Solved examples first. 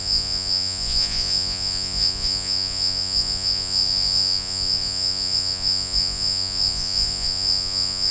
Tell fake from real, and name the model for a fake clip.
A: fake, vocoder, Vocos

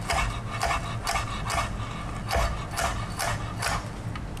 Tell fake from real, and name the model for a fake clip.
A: real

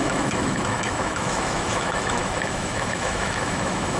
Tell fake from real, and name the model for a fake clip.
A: fake, autoencoder, DAC-VAE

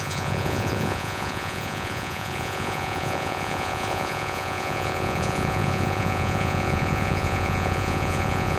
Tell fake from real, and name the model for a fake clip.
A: fake, vocoder, Vocos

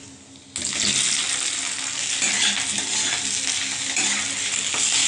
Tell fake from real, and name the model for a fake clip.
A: real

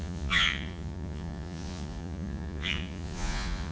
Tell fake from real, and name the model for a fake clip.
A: fake, vocoder, Vocos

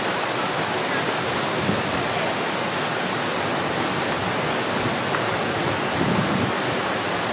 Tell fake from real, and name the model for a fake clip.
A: real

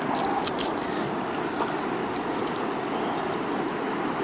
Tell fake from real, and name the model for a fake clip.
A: real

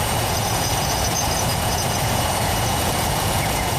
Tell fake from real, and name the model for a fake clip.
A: fake, vocoder, Vocos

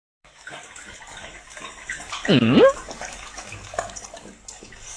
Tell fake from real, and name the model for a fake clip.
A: fake, codec, DAC